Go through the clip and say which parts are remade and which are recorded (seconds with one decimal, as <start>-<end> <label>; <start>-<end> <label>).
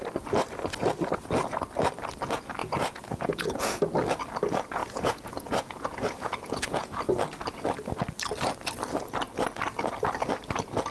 0.0-2.6 recorded; 2.6-3.8 remade; 3.8-4.8 recorded; 4.8-7.0 remade; 7.0-10.9 recorded